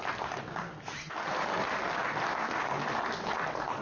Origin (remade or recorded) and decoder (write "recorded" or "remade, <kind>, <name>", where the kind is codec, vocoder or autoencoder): recorded